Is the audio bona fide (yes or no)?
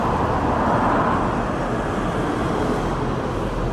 yes